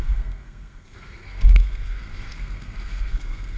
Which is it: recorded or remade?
remade